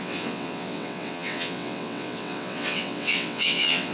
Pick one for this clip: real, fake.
fake